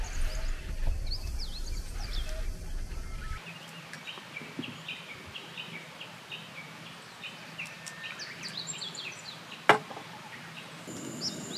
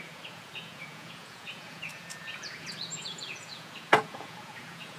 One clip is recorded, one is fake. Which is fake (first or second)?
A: second